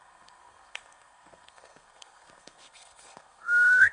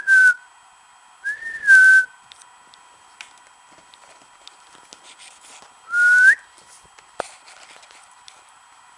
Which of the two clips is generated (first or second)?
first